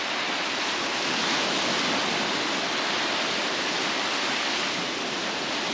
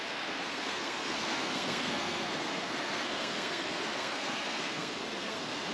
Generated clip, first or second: second